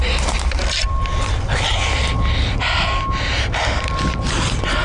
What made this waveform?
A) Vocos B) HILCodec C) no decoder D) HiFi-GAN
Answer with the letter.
C